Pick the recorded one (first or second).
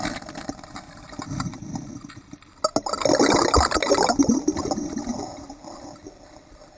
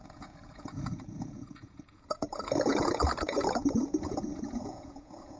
first